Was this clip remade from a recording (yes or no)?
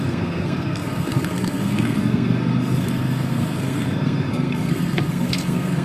yes